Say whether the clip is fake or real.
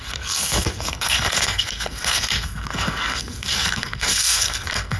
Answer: fake